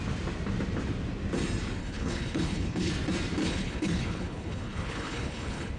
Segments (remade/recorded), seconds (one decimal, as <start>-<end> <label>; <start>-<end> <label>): 0.0-1.8 recorded; 1.8-2.9 remade; 2.9-3.4 recorded; 3.4-5.8 remade